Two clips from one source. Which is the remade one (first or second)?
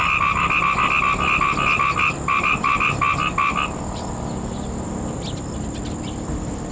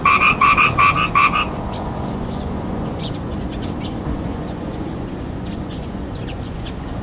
second